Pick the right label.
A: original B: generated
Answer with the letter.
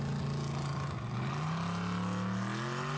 A